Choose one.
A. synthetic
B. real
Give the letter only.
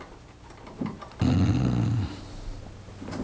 B